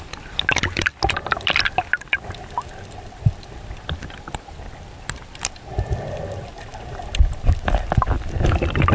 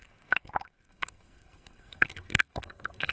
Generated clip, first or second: second